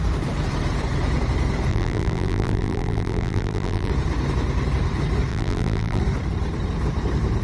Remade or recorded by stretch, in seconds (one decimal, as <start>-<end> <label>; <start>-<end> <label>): 0.0-1.7 recorded; 1.7-3.9 remade; 3.9-5.3 recorded; 5.3-6.0 remade; 6.0-7.4 recorded